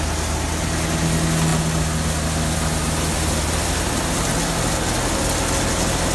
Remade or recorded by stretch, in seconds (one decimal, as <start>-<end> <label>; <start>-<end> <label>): 0.0-6.1 recorded